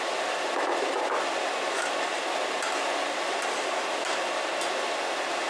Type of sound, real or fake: real